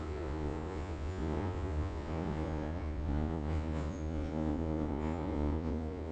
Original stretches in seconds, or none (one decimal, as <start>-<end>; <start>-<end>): none